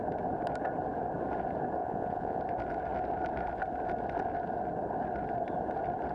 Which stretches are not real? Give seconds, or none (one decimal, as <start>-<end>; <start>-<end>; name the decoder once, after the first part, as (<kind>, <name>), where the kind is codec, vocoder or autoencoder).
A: 1.8-2.4 (vocoder, Vocos)